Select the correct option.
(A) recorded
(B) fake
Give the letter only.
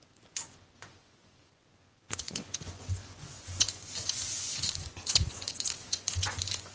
B